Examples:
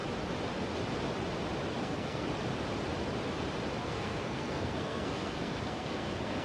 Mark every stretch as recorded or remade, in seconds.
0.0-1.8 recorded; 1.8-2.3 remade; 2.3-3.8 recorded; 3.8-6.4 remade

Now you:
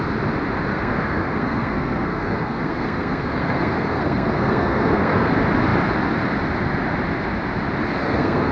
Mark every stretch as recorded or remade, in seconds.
0.0-0.7 recorded; 0.7-5.3 remade; 5.3-8.0 recorded; 8.0-8.5 remade

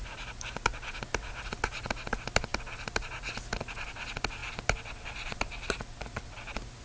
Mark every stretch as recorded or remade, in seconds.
0.0-6.8 recorded

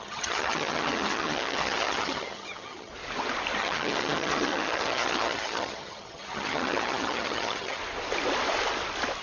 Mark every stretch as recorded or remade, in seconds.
0.0-2.9 remade; 2.9-3.6 recorded; 3.6-7.8 remade; 7.8-9.2 recorded